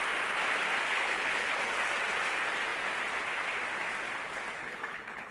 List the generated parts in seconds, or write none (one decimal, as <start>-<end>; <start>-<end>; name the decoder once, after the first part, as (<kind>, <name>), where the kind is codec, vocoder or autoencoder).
0.9-1.7 (codec, HILCodec); 4.6-5.3